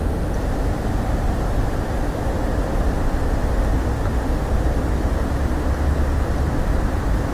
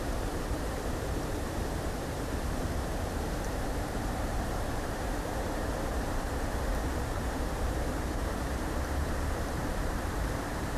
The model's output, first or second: second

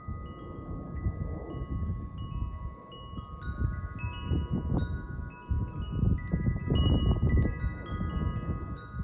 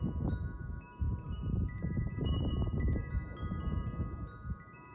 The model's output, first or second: second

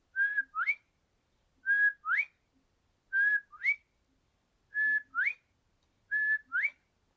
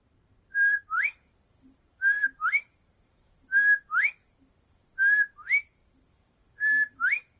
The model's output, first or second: second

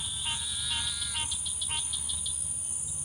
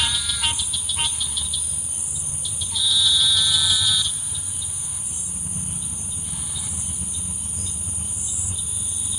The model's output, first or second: second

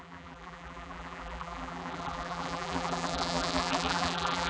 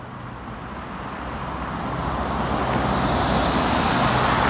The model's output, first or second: first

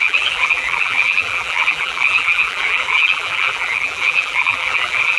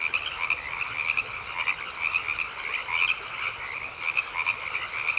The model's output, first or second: first